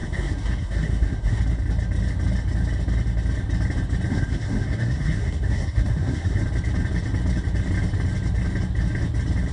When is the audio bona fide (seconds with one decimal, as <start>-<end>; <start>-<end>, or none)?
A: 1.4-4.1; 6.4-9.5